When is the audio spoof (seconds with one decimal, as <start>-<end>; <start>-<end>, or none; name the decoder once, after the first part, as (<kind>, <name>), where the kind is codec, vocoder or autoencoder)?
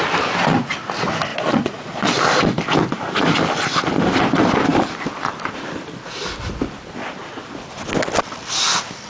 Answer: 1.3-2.2 (vocoder, Vocos)